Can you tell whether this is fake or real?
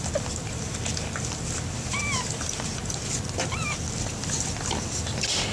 real